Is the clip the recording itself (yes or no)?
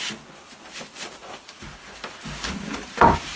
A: yes